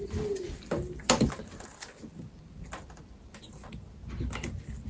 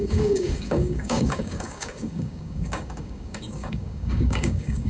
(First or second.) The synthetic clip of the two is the second